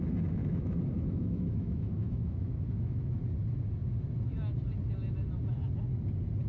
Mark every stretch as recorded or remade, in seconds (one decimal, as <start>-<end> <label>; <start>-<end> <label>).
0.0-0.4 recorded; 0.4-3.2 remade; 3.2-6.5 recorded